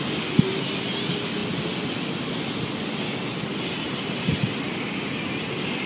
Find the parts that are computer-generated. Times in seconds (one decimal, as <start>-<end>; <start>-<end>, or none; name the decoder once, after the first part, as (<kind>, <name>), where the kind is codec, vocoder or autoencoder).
none